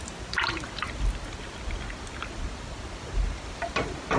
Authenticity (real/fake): real